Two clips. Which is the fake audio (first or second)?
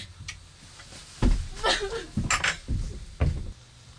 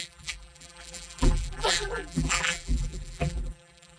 second